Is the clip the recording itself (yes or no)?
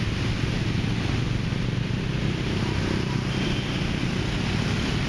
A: yes